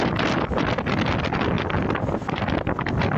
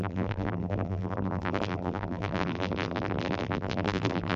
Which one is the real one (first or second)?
first